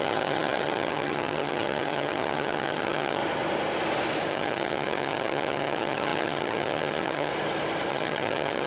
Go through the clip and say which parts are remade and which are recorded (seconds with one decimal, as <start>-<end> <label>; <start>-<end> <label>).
0.0-3.2 remade; 3.2-4.3 recorded; 4.3-7.3 remade; 7.3-7.9 recorded; 7.9-8.7 remade